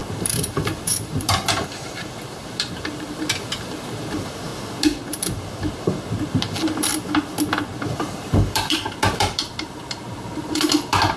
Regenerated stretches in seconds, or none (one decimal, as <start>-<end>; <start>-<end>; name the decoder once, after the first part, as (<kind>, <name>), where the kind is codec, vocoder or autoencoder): 0.0-4.5 (vocoder, BigVGAN v2); 5.7-6.9; 7.8-11.2